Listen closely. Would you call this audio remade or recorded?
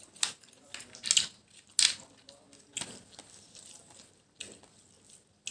recorded